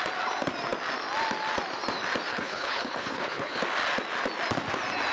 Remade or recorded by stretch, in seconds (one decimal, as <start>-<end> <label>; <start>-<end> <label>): 0.0-2.3 recorded; 2.3-3.6 remade; 3.6-5.1 recorded